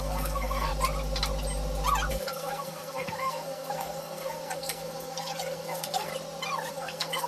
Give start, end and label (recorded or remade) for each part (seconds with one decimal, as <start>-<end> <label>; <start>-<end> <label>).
0.0-0.7 remade; 0.7-2.1 recorded; 2.1-6.1 remade; 6.1-6.7 recorded; 6.7-7.3 remade